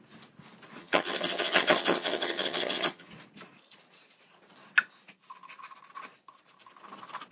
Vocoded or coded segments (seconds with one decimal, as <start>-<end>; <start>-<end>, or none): 0.8-3.1